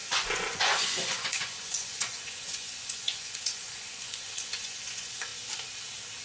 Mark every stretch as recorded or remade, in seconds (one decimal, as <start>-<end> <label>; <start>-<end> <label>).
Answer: 0.0-5.3 remade; 5.3-6.2 recorded